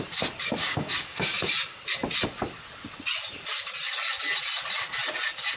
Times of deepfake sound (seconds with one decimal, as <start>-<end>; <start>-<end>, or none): 0.6-1.5